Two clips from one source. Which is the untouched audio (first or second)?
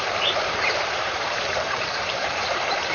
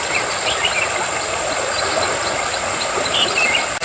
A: second